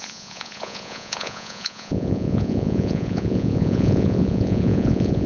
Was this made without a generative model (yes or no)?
no